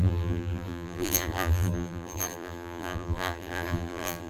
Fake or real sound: fake